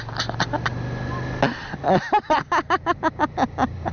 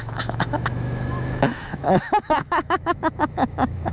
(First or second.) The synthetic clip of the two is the second